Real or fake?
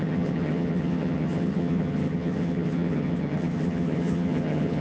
fake